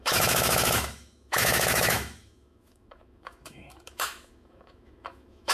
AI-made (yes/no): yes